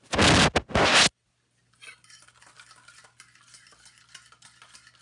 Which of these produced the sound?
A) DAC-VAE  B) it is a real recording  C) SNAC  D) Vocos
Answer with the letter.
B